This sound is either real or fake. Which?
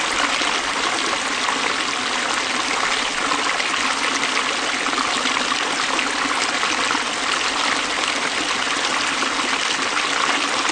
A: real